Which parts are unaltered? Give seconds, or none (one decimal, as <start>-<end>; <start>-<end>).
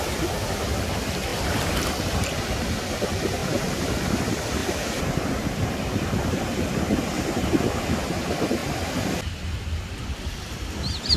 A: 4.6-5.1; 8.6-9.2